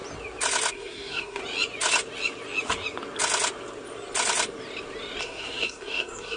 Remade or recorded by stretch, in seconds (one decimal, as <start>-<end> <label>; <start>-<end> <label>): 0.0-0.7 recorded; 0.7-1.4 remade; 1.4-5.2 recorded; 5.2-6.4 remade